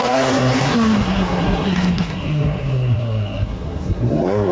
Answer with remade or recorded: remade